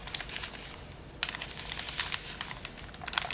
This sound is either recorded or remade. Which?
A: recorded